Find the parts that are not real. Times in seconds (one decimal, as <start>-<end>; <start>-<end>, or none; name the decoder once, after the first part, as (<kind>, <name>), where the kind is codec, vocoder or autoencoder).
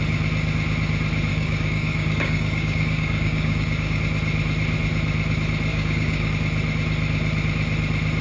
1.3-4.0 (codec, DAC); 5.7-6.3